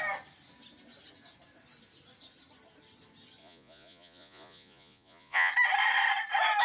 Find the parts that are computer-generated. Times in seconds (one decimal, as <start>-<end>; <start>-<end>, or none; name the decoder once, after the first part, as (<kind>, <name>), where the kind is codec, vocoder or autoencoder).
3.4-5.5 (vocoder, Vocos)